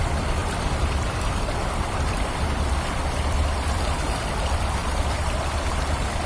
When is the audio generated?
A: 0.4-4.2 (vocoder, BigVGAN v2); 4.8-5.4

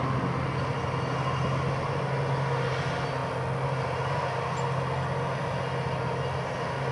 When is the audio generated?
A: none

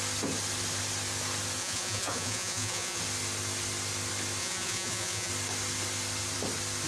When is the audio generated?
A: 1.6-3.0 (vocoder, Vocos); 4.4-5.3

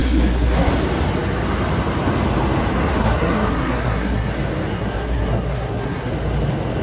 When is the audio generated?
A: 0.0-0.7 (codec, SNAC); 3.0-4.3; 4.7-6.1

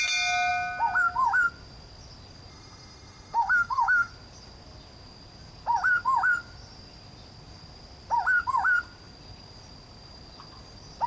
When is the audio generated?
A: 2.5-4.1 (autoencoder, DAC-VAE)